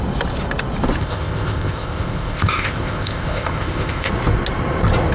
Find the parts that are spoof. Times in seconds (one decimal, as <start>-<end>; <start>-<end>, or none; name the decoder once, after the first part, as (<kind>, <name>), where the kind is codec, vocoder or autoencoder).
1.0-4.1 (codec, ZipCodec)